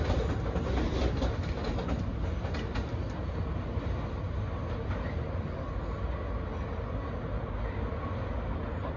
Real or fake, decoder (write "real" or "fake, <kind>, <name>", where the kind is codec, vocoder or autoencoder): real